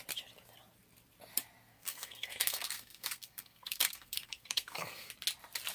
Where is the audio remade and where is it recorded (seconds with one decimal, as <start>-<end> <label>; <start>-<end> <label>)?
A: 0.0-1.7 recorded; 1.7-5.1 remade; 5.1-5.7 recorded